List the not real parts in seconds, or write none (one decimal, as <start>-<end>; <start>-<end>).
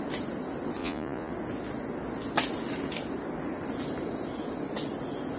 0.8-1.3